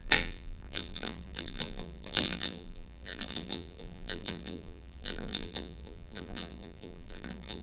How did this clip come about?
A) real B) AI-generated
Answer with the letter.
B